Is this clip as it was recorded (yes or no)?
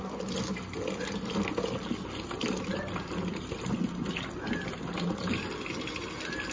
yes